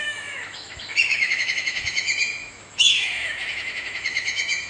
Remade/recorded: remade